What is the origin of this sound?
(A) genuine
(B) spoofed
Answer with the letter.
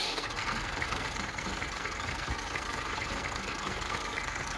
B